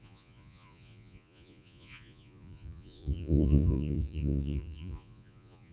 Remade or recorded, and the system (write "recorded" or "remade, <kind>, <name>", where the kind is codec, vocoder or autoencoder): remade, vocoder, Vocos